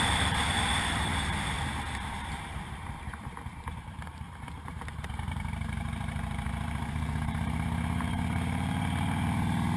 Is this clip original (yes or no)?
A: no